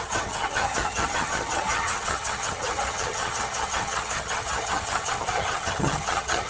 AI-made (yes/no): yes